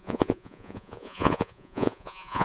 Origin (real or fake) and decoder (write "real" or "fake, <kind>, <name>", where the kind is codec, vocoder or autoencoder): fake, vocoder, Vocos